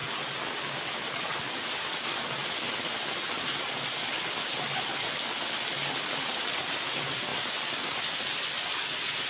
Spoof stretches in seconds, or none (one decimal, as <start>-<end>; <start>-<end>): none